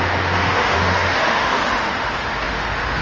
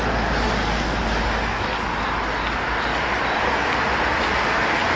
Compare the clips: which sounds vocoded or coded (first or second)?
first